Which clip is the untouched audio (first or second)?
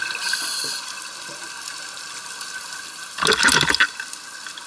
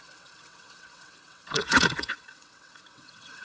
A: first